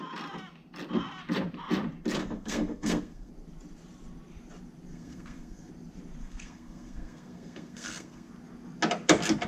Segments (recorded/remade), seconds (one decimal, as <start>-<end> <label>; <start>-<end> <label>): 0.0-2.2 recorded; 2.2-3.3 remade; 3.3-4.9 recorded; 4.9-5.7 remade; 5.7-6.2 recorded; 6.2-8.3 remade; 8.3-9.5 recorded